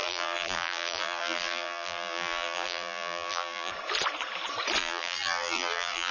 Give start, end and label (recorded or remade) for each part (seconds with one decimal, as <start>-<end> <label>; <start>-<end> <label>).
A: 0.0-3.7 remade; 3.7-4.8 recorded; 4.8-6.1 remade